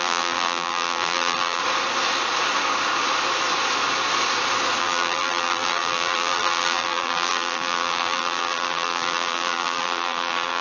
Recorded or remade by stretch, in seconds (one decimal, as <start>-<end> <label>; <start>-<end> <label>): 0.0-1.6 remade; 1.6-4.8 recorded; 4.8-10.6 remade